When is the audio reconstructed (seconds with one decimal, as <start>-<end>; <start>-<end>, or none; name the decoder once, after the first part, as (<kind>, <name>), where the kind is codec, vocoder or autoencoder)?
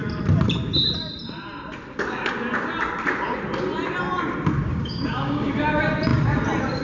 4.7-5.5 (codec, DAC)